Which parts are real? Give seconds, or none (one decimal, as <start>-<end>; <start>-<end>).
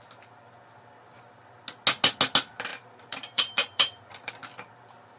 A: 0.0-2.7; 4.3-5.2